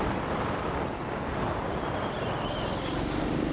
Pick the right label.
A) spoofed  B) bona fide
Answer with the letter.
B